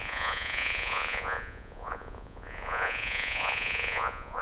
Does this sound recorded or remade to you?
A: remade